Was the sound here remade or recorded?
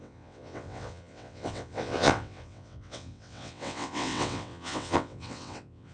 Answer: remade